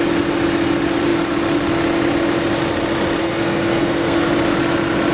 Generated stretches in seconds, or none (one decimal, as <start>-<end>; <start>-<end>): 3.2-4.3